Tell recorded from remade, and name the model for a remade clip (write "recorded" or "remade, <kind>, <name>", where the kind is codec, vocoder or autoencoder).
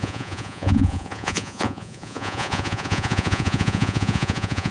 remade, vocoder, Vocos